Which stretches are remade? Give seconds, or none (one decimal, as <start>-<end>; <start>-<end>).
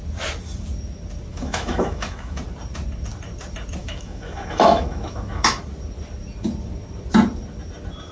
1.3-2.4; 3.8-5.6